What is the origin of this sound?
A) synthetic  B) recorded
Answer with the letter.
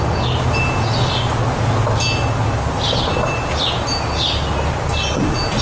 B